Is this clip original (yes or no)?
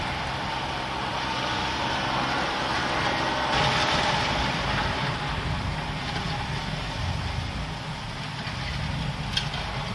yes